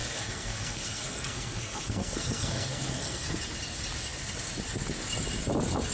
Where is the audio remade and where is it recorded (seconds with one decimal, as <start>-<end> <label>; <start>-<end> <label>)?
0.0-3.4 remade; 3.4-5.9 recorded

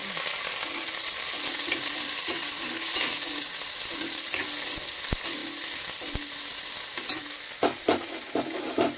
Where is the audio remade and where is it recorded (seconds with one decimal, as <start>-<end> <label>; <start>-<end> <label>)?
0.0-9.0 recorded